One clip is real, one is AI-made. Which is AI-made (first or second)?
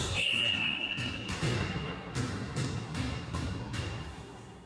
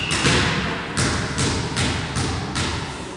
first